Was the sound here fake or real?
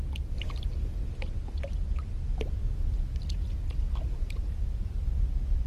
real